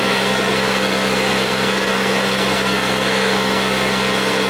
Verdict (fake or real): fake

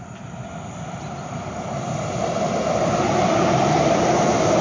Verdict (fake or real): real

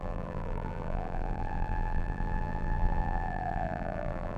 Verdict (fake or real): fake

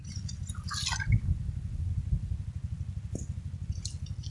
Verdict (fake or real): real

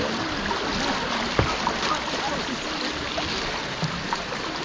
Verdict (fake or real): real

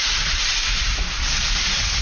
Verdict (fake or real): real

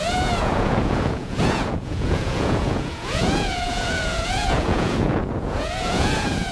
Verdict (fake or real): fake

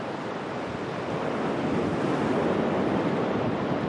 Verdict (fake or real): real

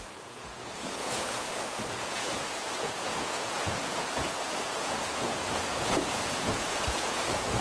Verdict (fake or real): fake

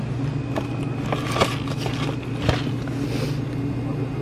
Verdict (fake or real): real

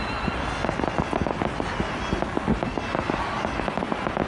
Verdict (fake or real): real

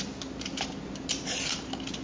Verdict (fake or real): real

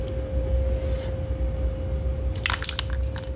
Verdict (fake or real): real